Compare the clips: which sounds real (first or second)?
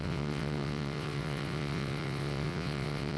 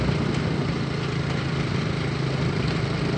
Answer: second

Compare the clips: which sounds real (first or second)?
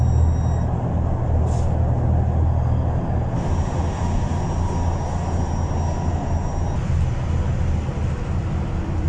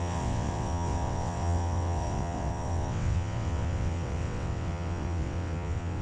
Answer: first